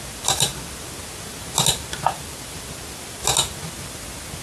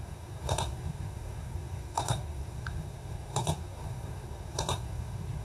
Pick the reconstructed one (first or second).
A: second